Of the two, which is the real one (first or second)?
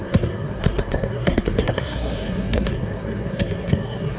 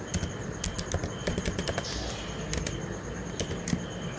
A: second